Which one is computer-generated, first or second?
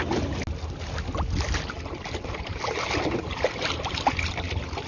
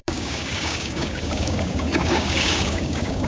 second